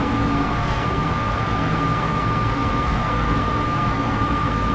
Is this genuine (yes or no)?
no